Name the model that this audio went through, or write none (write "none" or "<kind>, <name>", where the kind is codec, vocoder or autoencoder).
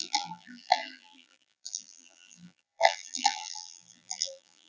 vocoder, BigVGAN v2